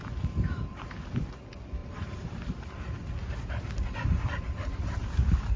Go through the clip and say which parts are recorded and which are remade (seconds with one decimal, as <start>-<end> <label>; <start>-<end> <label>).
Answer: 0.0-1.2 remade; 1.2-1.8 recorded; 1.8-2.8 remade; 2.8-3.2 recorded; 3.2-5.6 remade